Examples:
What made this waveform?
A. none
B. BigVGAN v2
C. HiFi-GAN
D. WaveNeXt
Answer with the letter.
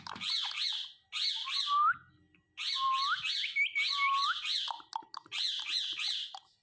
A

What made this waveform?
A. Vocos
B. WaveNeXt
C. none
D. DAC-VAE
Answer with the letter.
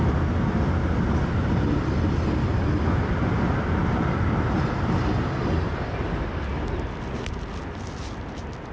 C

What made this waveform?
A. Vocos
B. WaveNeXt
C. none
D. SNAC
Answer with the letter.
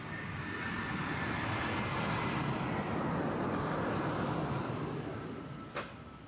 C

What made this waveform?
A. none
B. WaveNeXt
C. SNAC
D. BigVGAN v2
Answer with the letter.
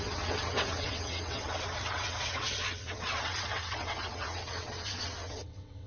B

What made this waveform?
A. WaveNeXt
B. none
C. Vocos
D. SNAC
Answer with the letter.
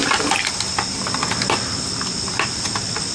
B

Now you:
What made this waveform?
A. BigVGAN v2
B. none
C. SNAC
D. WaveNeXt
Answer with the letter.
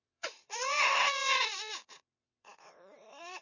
D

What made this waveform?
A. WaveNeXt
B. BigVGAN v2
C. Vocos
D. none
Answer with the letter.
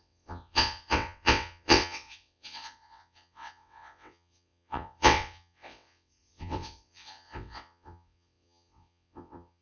A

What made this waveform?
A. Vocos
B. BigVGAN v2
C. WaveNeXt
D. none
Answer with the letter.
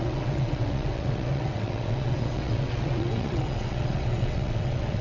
C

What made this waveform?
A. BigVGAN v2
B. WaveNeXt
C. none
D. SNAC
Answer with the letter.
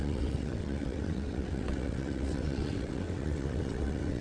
B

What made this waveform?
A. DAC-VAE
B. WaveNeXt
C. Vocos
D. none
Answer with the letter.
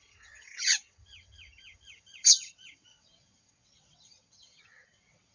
B